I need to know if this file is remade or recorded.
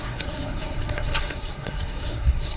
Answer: remade